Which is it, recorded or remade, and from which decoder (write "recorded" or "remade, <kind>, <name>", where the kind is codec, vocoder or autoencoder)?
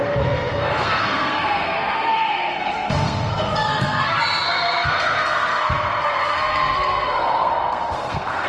remade, codec, SNAC